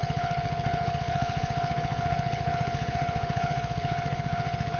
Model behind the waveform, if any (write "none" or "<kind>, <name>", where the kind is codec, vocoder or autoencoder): codec, HILCodec